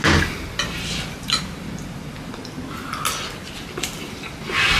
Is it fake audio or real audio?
real